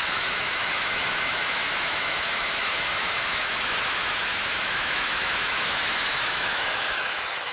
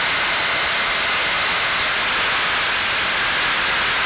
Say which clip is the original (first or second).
second